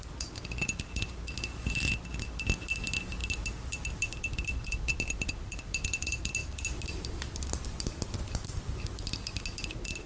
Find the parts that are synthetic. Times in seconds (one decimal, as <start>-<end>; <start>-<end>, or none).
none